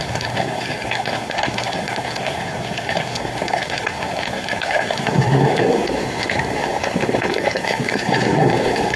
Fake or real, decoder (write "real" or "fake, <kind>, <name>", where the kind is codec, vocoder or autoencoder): fake, codec, SNAC